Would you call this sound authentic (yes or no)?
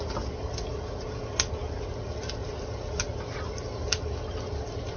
yes